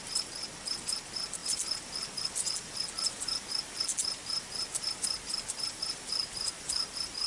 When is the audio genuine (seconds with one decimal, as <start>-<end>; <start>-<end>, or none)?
none